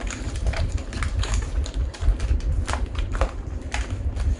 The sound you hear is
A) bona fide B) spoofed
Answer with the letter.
B